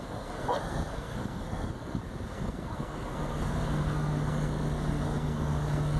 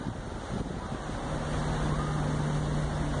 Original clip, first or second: second